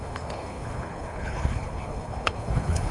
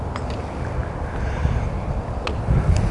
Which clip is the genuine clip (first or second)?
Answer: second